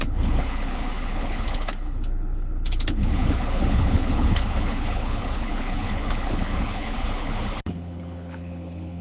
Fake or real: fake